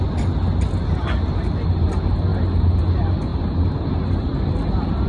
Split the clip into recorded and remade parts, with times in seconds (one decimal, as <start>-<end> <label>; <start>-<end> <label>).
0.0-5.1 recorded